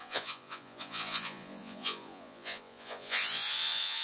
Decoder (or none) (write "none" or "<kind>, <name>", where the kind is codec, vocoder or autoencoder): vocoder, Vocos